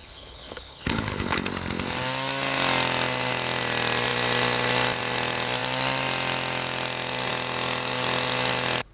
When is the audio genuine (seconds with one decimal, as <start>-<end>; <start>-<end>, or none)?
1.5-8.9